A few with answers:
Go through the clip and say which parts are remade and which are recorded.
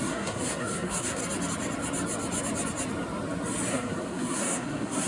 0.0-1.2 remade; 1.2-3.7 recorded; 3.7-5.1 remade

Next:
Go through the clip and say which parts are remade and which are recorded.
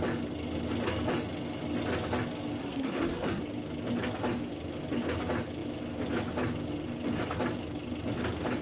0.0-2.6 recorded; 2.6-3.4 remade; 3.4-8.6 recorded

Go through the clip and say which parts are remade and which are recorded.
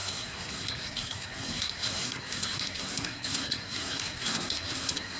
0.0-5.2 remade